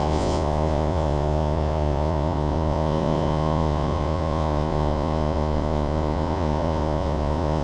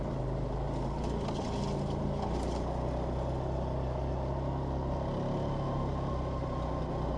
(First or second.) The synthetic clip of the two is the first